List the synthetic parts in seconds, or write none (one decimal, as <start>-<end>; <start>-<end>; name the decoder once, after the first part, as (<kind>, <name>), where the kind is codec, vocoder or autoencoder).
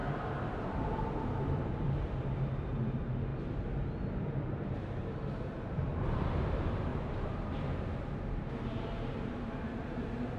0.0-3.3 (vocoder, BigVGAN v2); 4.1-10.4